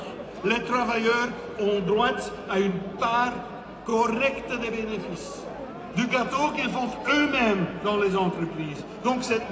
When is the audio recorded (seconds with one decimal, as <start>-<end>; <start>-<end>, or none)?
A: 0.0-9.5